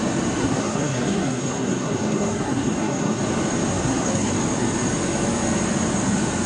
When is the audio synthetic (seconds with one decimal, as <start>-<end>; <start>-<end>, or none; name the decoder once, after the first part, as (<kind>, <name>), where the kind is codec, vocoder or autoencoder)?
0.4-3.2 (codec, SNAC); 3.7-4.3